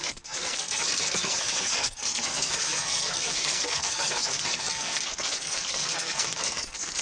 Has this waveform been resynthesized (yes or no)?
yes